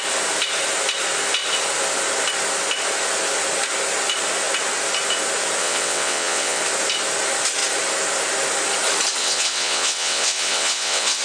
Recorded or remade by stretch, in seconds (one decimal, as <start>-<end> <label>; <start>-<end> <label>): 0.0-5.6 recorded; 5.6-6.6 remade; 6.6-9.2 recorded; 9.2-11.2 remade